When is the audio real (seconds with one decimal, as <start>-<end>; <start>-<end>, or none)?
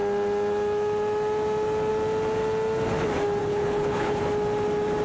0.0-3.4; 4.2-5.0